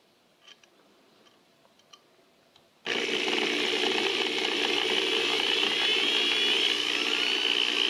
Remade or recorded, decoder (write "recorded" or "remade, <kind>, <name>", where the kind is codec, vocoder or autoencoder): recorded